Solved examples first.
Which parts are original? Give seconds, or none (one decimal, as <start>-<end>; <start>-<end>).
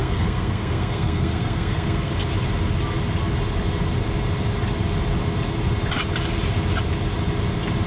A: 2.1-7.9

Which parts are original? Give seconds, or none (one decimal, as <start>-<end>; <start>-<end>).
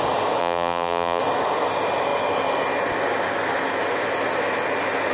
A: 0.0-0.4; 1.2-5.1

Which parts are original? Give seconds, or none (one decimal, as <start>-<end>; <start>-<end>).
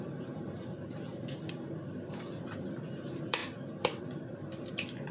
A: none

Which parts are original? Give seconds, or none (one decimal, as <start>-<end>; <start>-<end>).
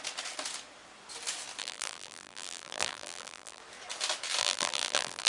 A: 0.0-1.6; 3.6-4.4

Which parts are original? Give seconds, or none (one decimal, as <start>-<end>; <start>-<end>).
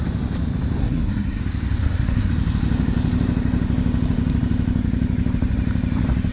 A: 0.0-0.8; 1.4-1.8; 2.3-6.3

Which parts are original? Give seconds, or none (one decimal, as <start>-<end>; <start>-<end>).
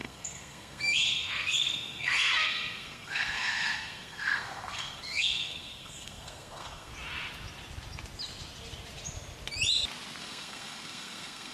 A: 6.9-10.2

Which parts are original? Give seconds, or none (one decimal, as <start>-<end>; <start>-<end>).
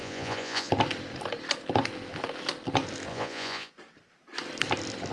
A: 0.7-3.1; 3.7-5.1